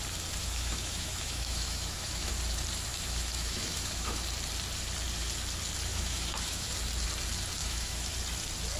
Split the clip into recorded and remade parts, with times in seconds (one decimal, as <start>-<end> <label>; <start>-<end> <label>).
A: 0.0-0.4 recorded; 0.4-2.3 remade; 2.3-2.9 recorded; 2.9-4.2 remade; 4.2-5.9 recorded; 5.9-6.7 remade; 6.7-7.6 recorded; 7.6-8.1 remade; 8.1-8.8 recorded